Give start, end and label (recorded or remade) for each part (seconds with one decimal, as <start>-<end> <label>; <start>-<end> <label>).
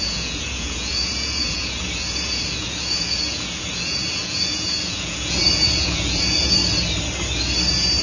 0.0-6.6 remade; 6.6-8.0 recorded